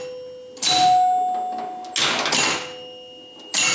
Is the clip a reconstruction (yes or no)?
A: no